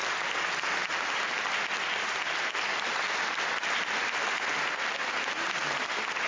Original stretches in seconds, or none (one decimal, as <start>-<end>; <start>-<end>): 0.0-6.3